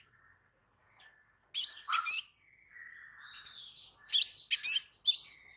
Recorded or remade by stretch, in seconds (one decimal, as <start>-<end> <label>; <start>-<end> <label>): 0.0-5.6 recorded